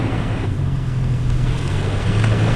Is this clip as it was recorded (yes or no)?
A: no